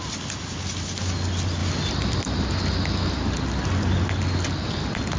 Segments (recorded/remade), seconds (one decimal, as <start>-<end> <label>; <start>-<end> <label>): 0.0-5.2 recorded